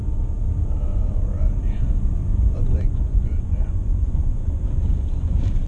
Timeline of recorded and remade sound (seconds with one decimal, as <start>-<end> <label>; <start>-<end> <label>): 0.0-0.9 recorded; 0.9-1.8 remade; 1.8-2.2 recorded; 2.2-5.7 remade